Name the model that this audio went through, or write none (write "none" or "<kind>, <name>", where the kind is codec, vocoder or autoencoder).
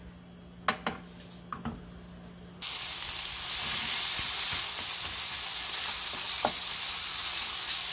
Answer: none